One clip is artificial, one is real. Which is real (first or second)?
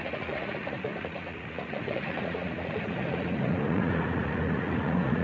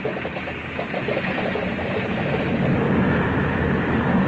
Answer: second